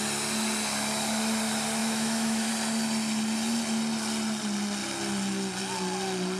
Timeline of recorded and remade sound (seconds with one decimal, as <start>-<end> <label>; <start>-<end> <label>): 0.0-1.8 recorded; 1.8-2.5 remade; 2.5-6.4 recorded